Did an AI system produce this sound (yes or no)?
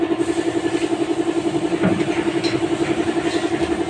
no